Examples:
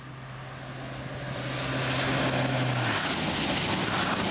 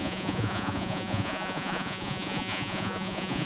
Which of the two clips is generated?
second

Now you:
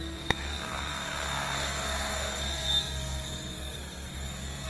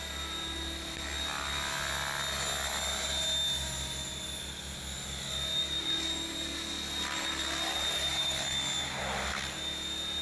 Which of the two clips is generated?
first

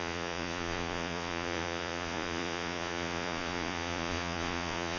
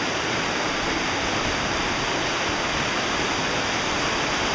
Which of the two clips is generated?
first